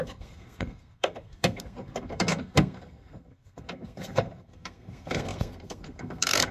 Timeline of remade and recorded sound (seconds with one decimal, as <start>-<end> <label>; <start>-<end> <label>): 0.0-6.5 remade